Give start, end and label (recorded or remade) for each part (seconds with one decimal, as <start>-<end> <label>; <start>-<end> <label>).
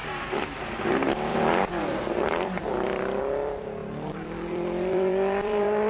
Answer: 0.0-0.6 recorded; 0.6-5.9 remade